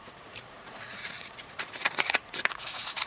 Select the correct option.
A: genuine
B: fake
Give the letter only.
B